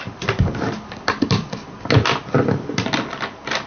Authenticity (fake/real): real